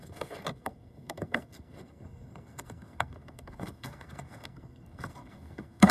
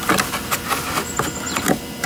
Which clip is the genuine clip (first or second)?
second